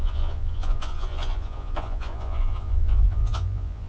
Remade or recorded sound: remade